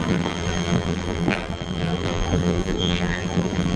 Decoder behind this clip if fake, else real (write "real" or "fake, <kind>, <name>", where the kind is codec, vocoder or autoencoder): fake, vocoder, BigVGAN v2